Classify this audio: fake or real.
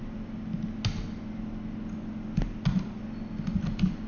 real